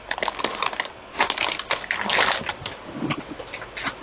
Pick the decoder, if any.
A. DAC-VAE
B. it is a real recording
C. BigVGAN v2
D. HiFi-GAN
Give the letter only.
B